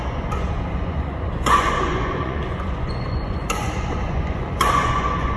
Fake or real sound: fake